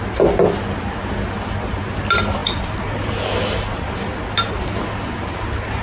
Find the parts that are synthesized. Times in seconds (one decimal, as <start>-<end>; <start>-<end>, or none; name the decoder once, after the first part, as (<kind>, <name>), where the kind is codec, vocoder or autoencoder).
none